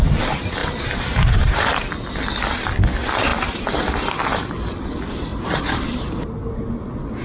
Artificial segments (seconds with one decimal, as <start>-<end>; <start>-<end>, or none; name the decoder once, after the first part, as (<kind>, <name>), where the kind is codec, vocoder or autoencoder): 0.6-1.8 (vocoder, BigVGAN v2); 5.3-6.6